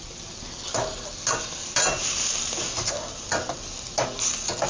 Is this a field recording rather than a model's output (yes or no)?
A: yes